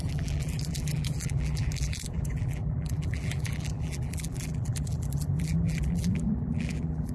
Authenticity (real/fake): fake